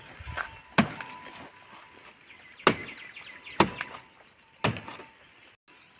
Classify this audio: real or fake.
real